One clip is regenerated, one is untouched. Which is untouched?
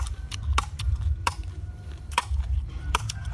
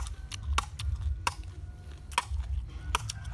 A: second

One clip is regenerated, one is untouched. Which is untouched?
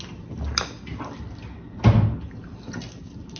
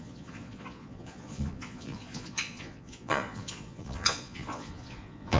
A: first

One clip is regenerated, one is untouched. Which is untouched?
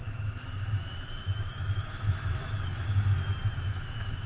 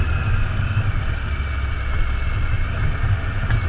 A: second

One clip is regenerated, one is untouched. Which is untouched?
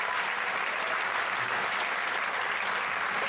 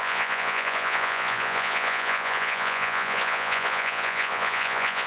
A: first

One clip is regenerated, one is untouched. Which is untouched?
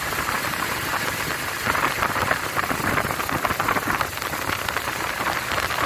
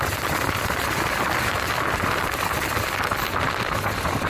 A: second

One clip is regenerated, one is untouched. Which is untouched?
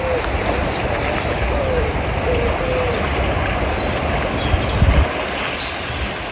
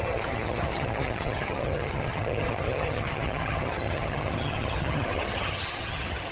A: first